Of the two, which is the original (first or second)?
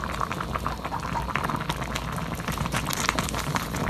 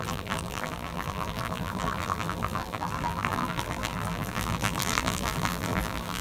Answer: first